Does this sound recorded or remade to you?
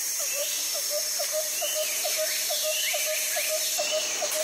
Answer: remade